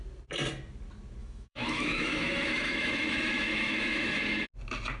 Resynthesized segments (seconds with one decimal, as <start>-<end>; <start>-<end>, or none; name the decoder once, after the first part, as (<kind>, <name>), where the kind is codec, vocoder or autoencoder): 1.2-4.2 (autoencoder, DAC-VAE)